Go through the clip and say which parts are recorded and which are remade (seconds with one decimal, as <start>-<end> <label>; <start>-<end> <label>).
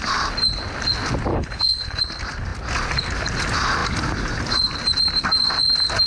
0.0-1.3 recorded; 1.3-2.0 remade; 2.0-6.1 recorded